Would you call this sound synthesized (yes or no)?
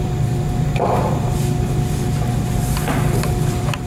yes